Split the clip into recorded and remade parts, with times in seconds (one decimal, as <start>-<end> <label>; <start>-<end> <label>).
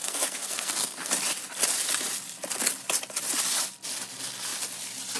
0.0-1.1 remade; 1.1-5.2 recorded